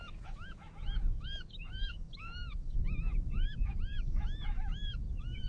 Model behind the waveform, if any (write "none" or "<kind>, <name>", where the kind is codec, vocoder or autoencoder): autoencoder, DAC-VAE